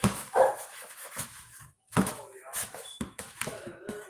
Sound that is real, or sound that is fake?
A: fake